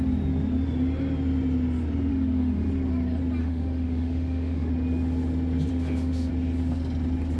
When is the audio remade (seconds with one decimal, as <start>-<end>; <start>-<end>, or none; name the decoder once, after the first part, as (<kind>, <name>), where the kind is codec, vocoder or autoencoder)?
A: 2.1-2.7 (autoencoder, DAC-VAE); 3.4-4.7; 5.7-6.3